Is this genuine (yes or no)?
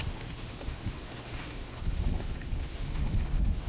no